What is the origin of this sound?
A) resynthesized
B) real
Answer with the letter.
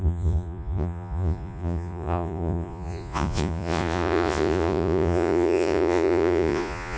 A